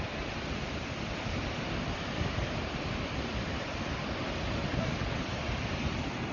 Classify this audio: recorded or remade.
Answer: recorded